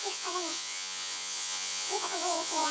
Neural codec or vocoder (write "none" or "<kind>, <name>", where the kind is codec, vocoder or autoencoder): vocoder, Vocos